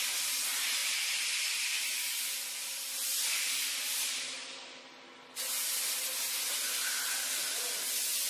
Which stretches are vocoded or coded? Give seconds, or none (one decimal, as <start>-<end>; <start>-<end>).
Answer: 0.8-4.8